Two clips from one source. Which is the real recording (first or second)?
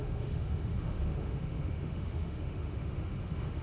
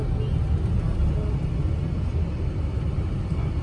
second